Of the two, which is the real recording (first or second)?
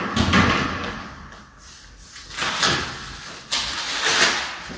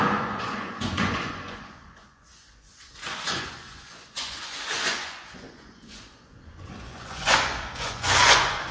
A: first